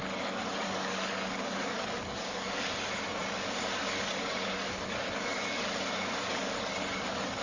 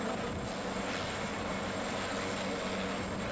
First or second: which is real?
second